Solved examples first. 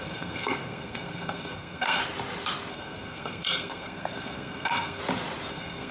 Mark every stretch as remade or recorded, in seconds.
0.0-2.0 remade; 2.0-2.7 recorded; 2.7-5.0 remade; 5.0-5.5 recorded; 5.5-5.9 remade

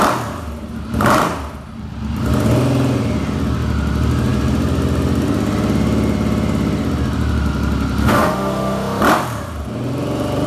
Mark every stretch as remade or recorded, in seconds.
0.0-8.0 recorded; 8.0-9.0 remade; 9.0-10.5 recorded

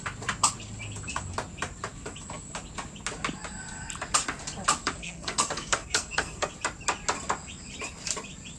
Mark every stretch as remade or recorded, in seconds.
0.0-5.0 recorded; 5.0-6.5 remade; 6.5-8.6 recorded

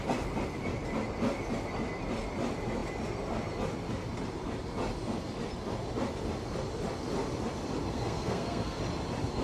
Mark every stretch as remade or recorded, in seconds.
0.0-7.9 recorded; 7.9-8.8 remade; 8.8-9.4 recorded

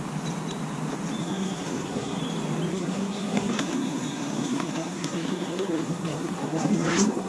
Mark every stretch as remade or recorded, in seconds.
0.0-1.2 recorded; 1.2-2.2 remade; 2.2-2.7 recorded; 2.7-7.3 remade